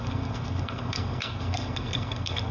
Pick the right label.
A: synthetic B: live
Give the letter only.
A